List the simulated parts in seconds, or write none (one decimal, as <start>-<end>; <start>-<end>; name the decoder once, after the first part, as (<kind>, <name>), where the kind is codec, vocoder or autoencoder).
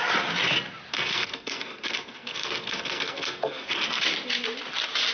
0.9-4.0 (codec, SNAC)